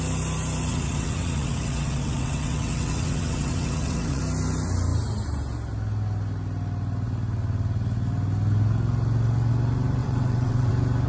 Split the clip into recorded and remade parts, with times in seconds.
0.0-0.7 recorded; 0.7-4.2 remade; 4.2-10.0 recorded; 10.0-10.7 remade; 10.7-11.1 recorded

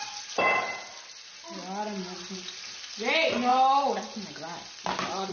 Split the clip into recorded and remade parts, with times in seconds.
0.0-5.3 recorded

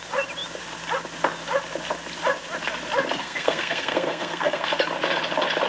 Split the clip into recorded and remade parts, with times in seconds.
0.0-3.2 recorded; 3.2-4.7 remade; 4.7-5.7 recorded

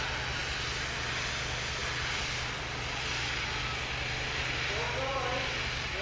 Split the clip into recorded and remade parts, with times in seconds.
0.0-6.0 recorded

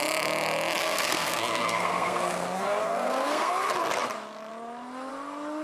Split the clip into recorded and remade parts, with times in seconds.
0.0-0.8 recorded; 0.8-3.5 remade; 3.5-5.6 recorded

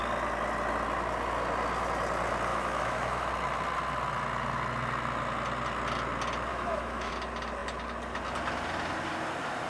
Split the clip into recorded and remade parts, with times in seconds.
0.0-2.5 recorded; 2.5-3.3 remade; 3.3-6.5 recorded; 6.5-7.1 remade; 7.1-9.7 recorded